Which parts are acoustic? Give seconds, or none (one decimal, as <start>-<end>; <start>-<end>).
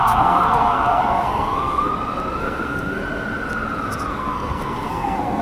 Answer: 1.9-2.4; 3.0-4.1